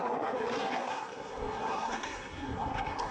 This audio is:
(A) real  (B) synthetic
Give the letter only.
B